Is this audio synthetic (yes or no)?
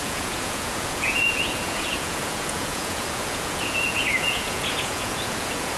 yes